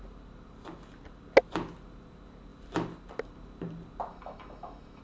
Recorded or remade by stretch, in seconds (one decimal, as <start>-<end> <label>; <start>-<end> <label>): 0.0-4.1 recorded; 4.1-5.0 remade